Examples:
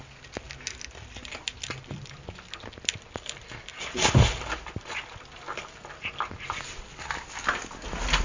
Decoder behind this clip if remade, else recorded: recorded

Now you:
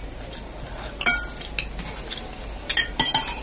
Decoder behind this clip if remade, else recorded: recorded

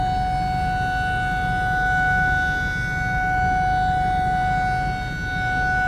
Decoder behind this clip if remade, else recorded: recorded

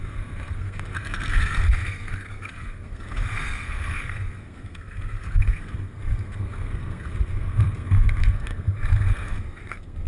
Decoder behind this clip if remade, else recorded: remade, codec, SNAC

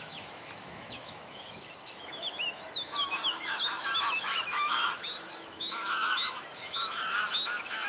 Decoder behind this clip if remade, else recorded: remade, autoencoder, DAC-VAE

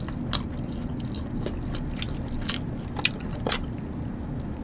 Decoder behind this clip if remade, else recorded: recorded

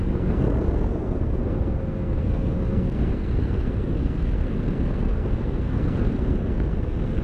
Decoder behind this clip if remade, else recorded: remade, codec, SNAC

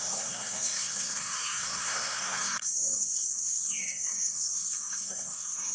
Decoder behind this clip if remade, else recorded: remade, codec, SNAC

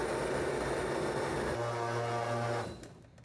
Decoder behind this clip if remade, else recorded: recorded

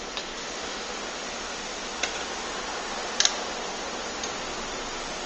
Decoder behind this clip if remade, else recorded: recorded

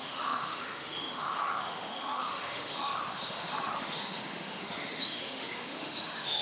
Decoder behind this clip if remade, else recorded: remade, autoencoder, DAC-VAE